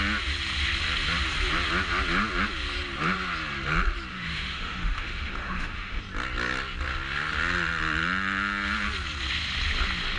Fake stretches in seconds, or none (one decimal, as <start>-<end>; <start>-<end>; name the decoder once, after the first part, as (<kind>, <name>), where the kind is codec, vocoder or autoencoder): 4.1-6.0 (autoencoder, DAC-VAE)